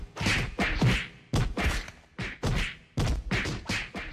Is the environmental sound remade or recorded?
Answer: recorded